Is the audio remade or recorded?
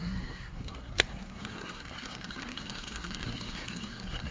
remade